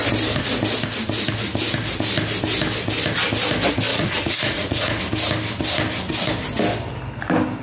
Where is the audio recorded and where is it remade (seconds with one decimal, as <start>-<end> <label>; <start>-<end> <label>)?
0.0-3.9 recorded; 3.9-5.0 remade; 5.0-7.6 recorded